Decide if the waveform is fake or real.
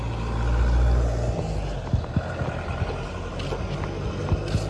real